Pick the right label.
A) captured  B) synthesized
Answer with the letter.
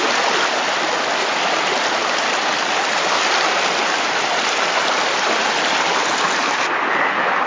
A